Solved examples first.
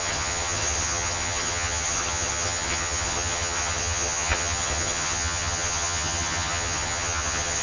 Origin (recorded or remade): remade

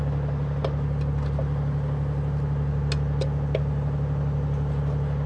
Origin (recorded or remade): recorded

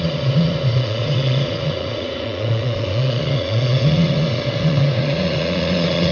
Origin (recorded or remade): remade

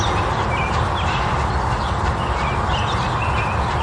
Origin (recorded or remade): recorded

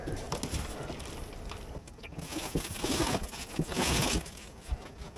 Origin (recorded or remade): recorded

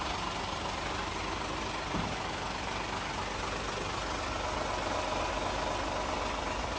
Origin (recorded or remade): recorded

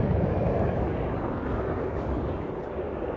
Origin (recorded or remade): remade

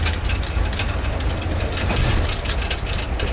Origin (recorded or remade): recorded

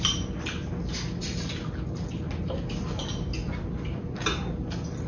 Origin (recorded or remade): recorded